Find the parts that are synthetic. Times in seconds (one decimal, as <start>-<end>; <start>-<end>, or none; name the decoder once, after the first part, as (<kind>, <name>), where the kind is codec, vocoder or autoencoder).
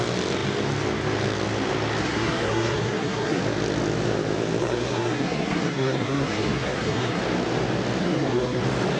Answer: 2.0-3.4 (codec, SNAC); 4.6-7.2; 8.0-8.6